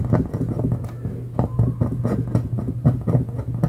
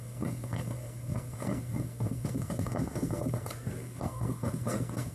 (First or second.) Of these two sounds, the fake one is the second